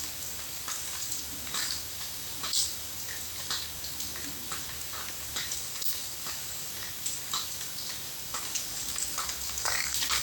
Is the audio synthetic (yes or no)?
yes